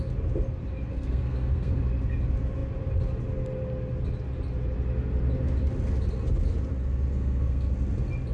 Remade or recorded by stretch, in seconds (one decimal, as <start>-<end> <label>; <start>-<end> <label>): 0.0-0.9 recorded; 0.9-1.8 remade; 1.8-7.1 recorded; 7.1-7.7 remade; 7.7-8.3 recorded